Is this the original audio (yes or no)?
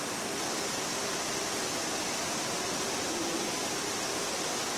yes